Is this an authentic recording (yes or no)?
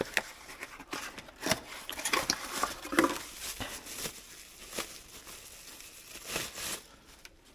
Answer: yes